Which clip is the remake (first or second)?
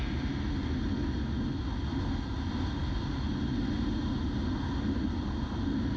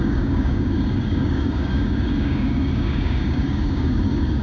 second